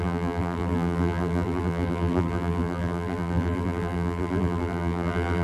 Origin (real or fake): fake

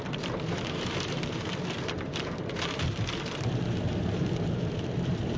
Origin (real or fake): fake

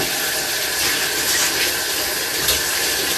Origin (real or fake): real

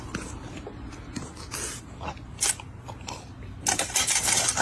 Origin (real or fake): real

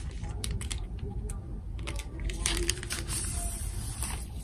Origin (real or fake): fake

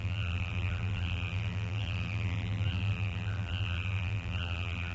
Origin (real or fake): fake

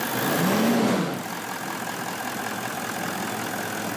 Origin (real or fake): real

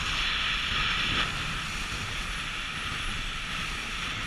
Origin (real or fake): real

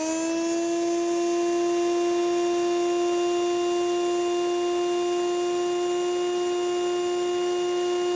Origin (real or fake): real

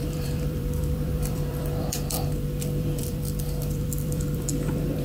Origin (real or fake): fake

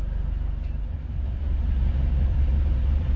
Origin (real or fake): fake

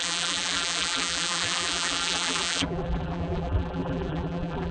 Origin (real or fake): fake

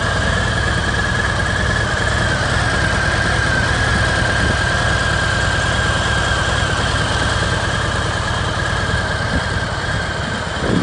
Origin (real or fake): real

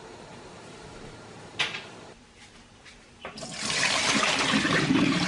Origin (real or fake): fake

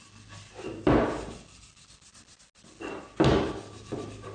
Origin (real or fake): real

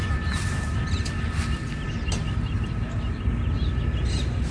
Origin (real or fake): real